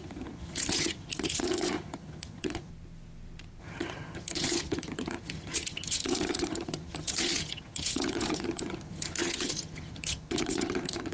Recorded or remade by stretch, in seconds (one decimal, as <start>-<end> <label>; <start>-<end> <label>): 0.0-2.7 remade; 2.7-3.6 recorded; 3.6-11.1 remade